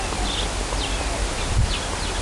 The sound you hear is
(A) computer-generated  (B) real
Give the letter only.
B